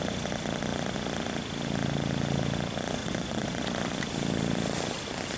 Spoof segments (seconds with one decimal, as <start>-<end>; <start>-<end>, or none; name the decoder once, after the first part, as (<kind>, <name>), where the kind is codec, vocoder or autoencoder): 3.0-3.6 (vocoder, Vocos)